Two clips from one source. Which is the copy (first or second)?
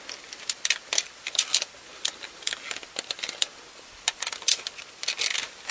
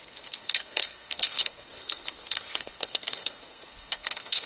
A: second